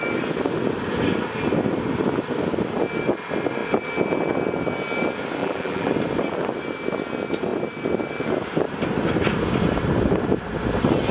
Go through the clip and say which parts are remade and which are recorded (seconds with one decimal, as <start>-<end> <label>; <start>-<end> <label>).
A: 0.0-5.4 recorded; 5.4-5.9 remade; 5.9-11.1 recorded